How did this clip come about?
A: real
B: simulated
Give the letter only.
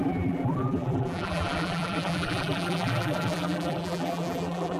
B